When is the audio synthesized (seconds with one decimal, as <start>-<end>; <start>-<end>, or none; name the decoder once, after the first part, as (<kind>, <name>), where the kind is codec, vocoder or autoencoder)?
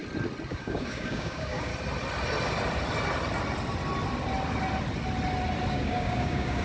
0.5-1.7 (codec, DAC); 5.7-6.6